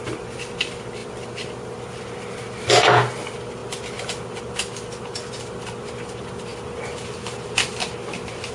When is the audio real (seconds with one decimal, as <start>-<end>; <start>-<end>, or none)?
0.0-8.5